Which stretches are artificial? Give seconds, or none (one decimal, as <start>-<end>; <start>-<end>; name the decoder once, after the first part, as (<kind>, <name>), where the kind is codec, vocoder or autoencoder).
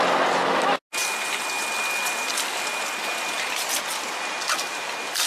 none